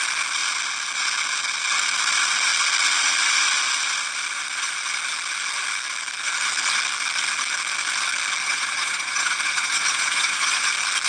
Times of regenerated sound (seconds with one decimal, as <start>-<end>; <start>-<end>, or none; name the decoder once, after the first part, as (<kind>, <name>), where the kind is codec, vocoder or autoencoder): 8.4-10.7 (vocoder, Vocos)